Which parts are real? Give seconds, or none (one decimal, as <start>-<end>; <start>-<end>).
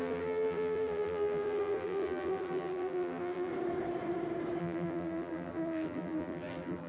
3.5-4.6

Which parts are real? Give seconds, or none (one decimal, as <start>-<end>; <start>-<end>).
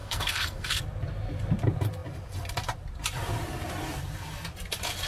0.8-5.1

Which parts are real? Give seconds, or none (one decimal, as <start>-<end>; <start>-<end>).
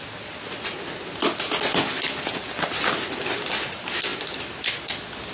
0.0-5.3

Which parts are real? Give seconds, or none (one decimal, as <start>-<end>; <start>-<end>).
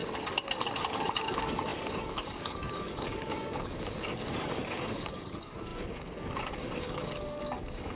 0.0-0.9